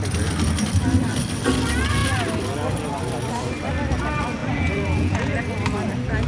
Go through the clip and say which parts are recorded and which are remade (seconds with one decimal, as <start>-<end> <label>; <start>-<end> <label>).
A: 0.0-4.4 recorded; 4.4-5.4 remade; 5.4-6.3 recorded